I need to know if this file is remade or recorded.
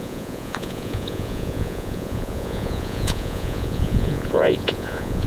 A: remade